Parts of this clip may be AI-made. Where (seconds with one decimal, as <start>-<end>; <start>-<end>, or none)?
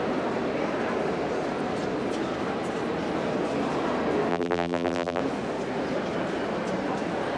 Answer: 4.3-5.2